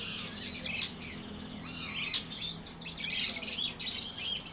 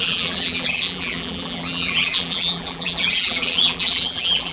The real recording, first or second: first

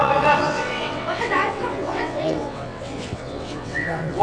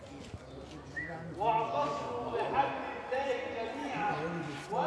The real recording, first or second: second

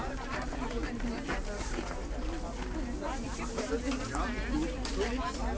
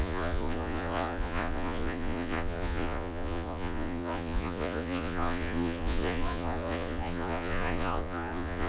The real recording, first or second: first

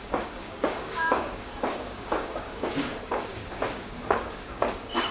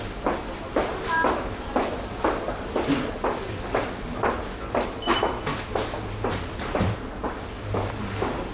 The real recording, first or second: second